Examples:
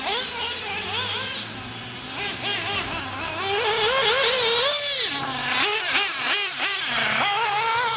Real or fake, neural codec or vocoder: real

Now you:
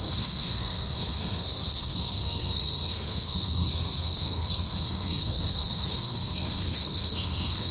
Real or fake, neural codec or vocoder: fake, codec, SNAC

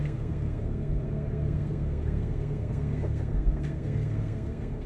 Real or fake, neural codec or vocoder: fake, codec, SNAC